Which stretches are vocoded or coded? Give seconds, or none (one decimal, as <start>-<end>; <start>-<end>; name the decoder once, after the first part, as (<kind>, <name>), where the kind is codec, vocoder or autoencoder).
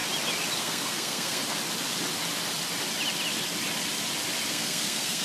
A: 0.6-1.4 (codec, SNAC); 4.5-5.2